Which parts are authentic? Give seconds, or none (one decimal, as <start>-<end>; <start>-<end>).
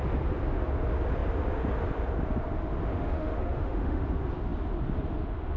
0.0-2.9; 4.0-5.6